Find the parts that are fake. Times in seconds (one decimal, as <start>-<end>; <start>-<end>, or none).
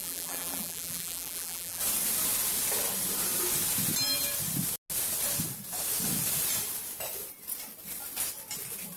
0.0-1.8